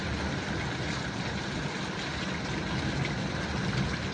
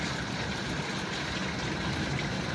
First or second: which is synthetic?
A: second